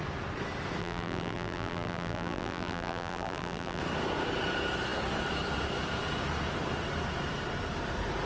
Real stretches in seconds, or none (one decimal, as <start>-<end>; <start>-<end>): 0.0-0.8; 3.8-8.3